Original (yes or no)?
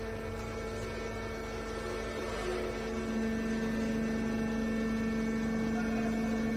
yes